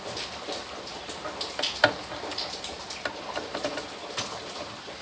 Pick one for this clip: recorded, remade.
recorded